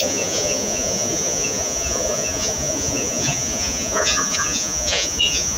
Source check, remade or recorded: remade